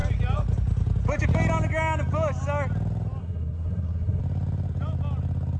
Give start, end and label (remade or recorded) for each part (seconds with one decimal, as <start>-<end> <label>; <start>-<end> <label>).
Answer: 0.0-3.2 recorded; 3.2-4.2 remade; 4.2-5.6 recorded

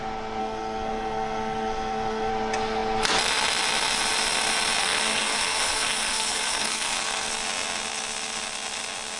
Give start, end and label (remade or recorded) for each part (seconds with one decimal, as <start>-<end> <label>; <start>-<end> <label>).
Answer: 0.0-0.4 recorded; 0.4-2.3 remade; 2.3-4.8 recorded; 4.8-7.3 remade; 7.3-9.2 recorded

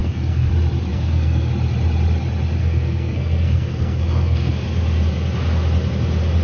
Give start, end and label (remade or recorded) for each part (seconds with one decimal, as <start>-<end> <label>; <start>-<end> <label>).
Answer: 0.0-0.5 remade; 0.5-0.9 recorded; 0.9-1.5 remade; 1.5-2.6 recorded; 2.6-4.5 remade; 4.5-6.4 recorded

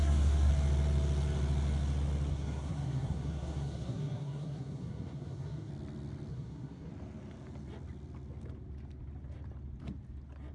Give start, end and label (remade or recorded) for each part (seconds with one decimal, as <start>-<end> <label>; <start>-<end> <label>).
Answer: 0.0-0.5 remade; 0.5-2.3 recorded; 2.3-5.7 remade; 5.7-6.3 recorded; 6.3-6.9 remade; 6.9-10.5 recorded

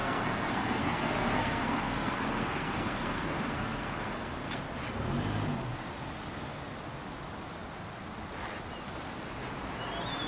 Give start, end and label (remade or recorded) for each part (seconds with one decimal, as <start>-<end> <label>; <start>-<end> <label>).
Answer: 0.0-4.6 remade; 4.6-10.3 recorded